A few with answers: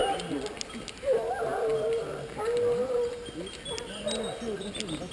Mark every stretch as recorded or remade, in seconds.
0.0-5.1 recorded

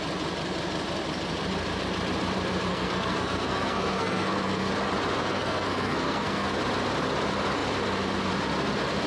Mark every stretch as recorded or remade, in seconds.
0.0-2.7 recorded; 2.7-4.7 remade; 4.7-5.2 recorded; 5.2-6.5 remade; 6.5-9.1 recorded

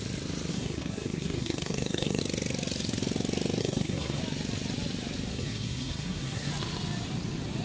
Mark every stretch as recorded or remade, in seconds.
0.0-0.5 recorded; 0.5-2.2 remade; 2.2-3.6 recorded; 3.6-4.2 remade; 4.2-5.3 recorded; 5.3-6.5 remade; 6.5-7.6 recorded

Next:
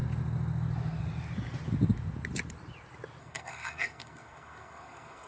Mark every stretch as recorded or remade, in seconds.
0.0-3.2 recorded; 3.2-5.3 remade

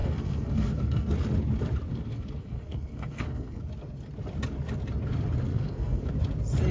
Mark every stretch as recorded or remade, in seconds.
0.0-1.1 remade; 1.1-1.9 recorded; 1.9-3.6 remade; 3.6-5.5 recorded; 5.5-6.1 remade; 6.1-6.7 recorded